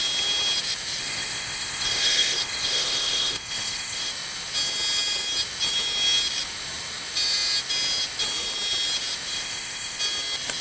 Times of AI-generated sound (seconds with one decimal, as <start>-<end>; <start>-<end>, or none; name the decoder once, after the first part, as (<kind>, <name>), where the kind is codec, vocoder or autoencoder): 1.0-4.1 (codec, ZipCodec); 9.3-10.0